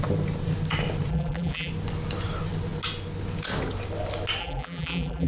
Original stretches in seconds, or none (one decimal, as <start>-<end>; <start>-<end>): 0.0-1.1; 1.7-4.4